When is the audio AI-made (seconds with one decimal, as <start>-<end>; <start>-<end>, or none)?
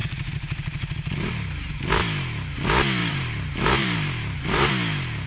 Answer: 0.0-1.9; 3.0-4.7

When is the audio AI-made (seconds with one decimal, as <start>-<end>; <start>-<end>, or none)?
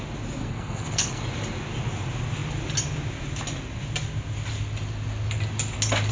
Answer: 0.4-1.2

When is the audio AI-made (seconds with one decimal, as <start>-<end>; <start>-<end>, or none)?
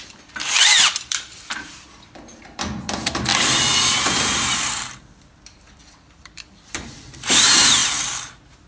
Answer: 0.0-3.3; 3.9-7.8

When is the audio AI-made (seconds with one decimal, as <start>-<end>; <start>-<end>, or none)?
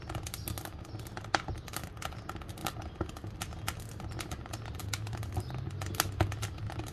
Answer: none